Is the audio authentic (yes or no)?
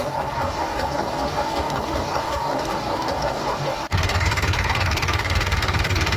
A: no